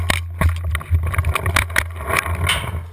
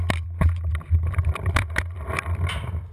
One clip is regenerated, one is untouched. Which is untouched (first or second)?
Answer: first